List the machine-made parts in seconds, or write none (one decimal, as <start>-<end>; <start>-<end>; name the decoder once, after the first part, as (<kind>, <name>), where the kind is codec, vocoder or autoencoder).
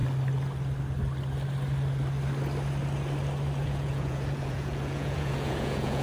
3.6-6.0 (vocoder, Vocos)